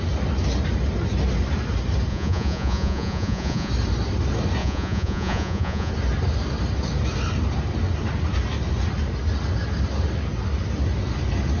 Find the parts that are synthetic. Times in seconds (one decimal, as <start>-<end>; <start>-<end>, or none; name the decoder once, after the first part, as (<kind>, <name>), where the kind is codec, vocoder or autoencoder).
2.1-3.7 (vocoder, Vocos); 4.6-5.9